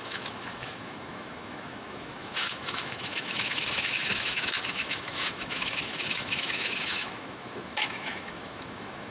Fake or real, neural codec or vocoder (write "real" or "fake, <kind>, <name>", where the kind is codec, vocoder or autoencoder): fake, autoencoder, DAC-VAE